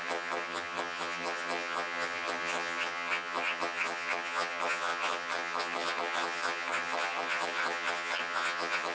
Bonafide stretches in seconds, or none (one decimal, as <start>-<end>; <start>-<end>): none